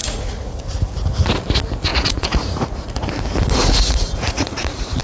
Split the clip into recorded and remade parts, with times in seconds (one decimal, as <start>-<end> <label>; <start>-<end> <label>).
0.0-0.6 remade; 0.6-1.9 recorded; 1.9-3.1 remade; 3.1-3.6 recorded; 3.6-5.0 remade